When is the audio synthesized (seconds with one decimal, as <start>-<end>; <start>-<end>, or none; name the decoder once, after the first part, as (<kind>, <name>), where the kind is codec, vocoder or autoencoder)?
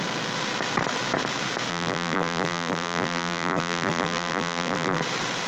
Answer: 1.7-5.0 (vocoder, BigVGAN v2)